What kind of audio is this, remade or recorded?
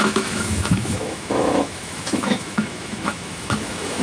remade